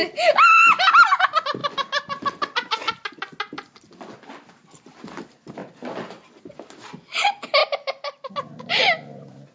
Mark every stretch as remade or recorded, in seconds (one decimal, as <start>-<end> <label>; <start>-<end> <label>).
0.0-9.5 recorded